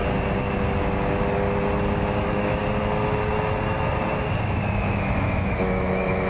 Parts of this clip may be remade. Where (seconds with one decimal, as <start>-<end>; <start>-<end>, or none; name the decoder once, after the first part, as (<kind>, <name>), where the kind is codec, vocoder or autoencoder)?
2.2-2.6 (autoencoder, DAC-VAE); 4.4-6.3